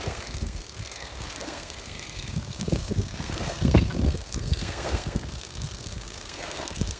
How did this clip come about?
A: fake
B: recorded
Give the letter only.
A